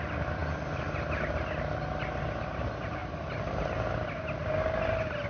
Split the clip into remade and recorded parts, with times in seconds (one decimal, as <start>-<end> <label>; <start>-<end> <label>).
0.0-5.3 recorded